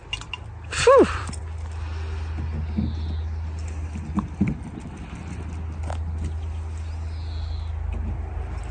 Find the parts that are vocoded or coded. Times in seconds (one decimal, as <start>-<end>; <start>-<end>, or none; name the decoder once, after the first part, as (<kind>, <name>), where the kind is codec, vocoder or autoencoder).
none